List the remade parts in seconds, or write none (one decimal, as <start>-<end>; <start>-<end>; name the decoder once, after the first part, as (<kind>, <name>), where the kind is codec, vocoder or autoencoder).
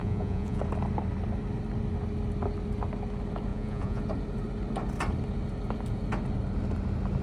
0.0-0.6 (vocoder, Vocos); 3.5-4.0